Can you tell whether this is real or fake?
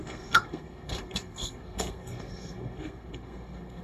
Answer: fake